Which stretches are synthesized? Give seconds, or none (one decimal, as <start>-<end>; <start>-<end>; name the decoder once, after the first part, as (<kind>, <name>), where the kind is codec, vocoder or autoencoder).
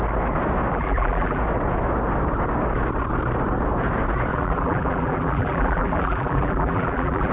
0.7-1.4 (vocoder, BigVGAN v2); 4.3-7.3